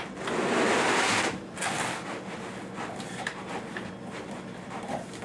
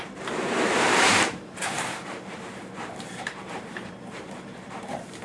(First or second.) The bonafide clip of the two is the first